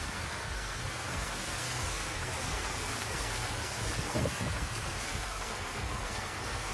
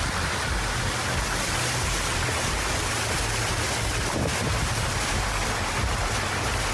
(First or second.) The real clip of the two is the second